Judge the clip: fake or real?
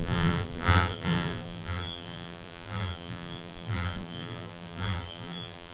fake